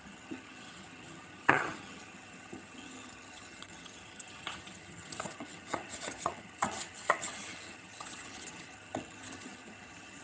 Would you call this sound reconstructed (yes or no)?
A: yes